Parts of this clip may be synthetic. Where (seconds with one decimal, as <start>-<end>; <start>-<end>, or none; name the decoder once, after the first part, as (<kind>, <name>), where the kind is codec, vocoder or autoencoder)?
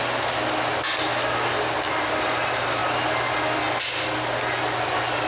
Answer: none